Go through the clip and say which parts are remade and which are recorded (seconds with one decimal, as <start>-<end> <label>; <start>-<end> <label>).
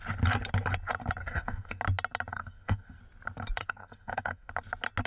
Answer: 0.0-1.2 recorded; 1.2-1.8 remade; 1.8-2.3 recorded; 2.3-3.0 remade; 3.0-3.6 recorded; 3.6-4.5 remade; 4.5-5.1 recorded